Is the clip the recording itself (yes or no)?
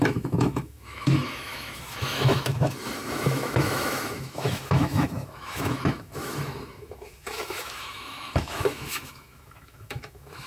no